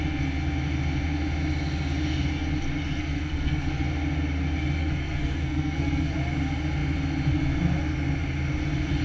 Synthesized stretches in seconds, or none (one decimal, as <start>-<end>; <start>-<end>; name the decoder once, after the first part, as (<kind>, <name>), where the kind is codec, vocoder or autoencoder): 3.0-3.7 (codec, SNAC); 4.8-6.1

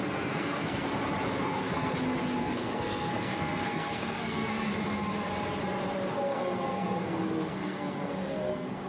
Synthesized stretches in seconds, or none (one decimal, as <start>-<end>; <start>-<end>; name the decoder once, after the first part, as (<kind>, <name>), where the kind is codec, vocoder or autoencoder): 0.0-0.9 (codec, SNAC); 1.4-1.9; 2.4-4.7; 6.1-8.9